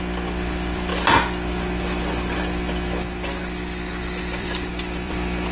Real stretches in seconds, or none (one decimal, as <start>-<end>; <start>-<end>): 0.9-4.2